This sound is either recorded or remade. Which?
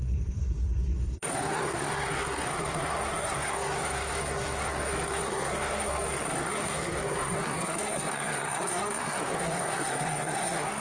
remade